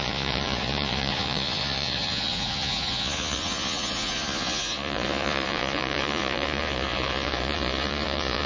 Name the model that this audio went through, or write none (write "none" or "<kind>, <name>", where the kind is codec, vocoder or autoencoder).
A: vocoder, Vocos